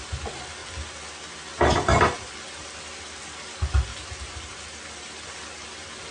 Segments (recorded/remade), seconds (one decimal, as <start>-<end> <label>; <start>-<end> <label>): 0.0-1.5 recorded; 1.5-2.9 remade; 2.9-3.9 recorded; 3.9-5.4 remade; 5.4-6.1 recorded